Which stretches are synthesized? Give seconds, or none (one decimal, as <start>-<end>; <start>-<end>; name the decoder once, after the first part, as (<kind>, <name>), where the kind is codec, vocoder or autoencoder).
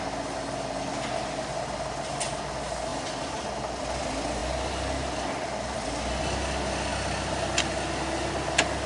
none